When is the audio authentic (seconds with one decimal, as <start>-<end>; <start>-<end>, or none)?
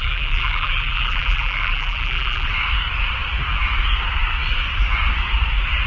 2.5-5.9